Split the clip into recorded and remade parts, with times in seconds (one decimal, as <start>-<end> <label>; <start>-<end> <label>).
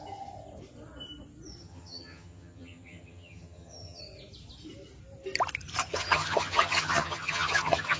0.0-1.6 recorded; 1.6-4.0 remade; 4.0-5.8 recorded; 5.8-8.0 remade